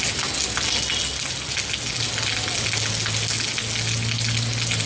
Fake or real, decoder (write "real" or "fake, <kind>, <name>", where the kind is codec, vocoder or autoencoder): real